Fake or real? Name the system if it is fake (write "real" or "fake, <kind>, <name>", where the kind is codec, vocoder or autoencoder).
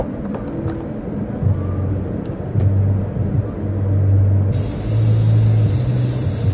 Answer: real